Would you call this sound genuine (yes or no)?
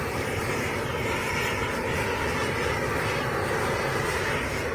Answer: yes